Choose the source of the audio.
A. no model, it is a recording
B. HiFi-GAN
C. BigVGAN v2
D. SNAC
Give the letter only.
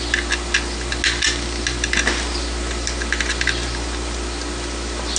A